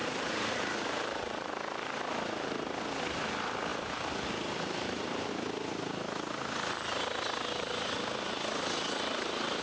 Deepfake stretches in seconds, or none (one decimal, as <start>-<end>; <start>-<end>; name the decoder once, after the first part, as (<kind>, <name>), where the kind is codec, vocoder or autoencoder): 0.0-1.5 (vocoder, BigVGAN v2); 3.7-5.3